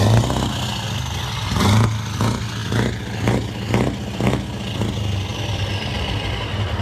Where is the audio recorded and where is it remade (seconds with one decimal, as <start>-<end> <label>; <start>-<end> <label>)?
0.0-5.3 recorded; 5.3-6.8 remade